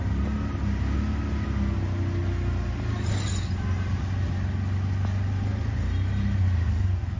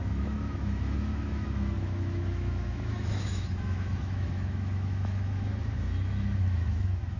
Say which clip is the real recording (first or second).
first